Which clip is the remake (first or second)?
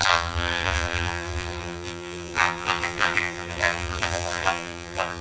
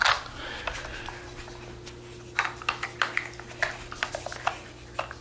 first